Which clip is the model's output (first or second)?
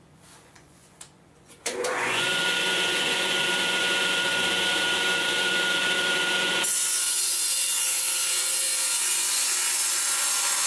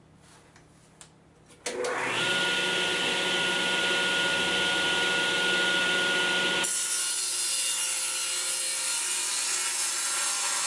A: first